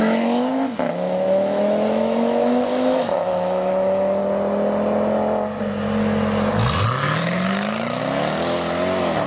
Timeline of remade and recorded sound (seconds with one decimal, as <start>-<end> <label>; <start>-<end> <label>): 0.0-4.2 remade; 4.2-7.2 recorded; 7.2-8.0 remade; 8.0-9.3 recorded